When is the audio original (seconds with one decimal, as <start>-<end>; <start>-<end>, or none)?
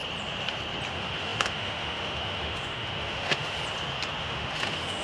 0.0-0.9; 3.6-4.2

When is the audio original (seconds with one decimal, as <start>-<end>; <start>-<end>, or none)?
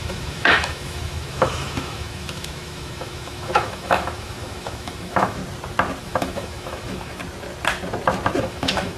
5.4-6.0; 7.2-8.4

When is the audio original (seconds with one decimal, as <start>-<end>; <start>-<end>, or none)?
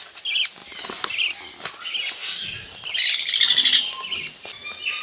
0.0-5.0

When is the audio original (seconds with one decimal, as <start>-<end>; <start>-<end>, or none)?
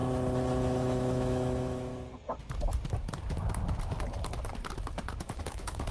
0.0-0.6; 1.9-5.4